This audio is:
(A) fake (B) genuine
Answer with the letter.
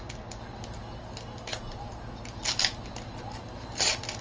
B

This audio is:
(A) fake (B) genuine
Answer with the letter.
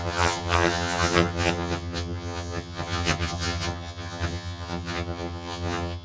A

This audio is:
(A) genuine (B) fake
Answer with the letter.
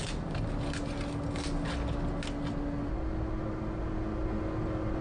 A